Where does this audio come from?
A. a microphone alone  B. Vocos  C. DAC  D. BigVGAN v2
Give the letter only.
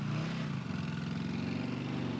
A